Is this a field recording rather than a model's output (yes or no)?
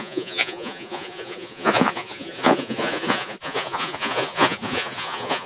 no